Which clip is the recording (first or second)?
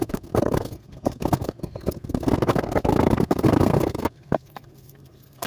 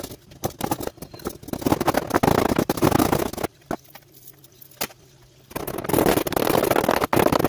second